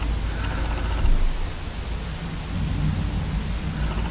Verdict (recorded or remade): recorded